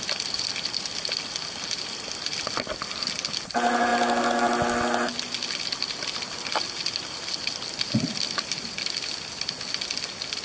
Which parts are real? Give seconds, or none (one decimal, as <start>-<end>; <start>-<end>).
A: 0.0-10.4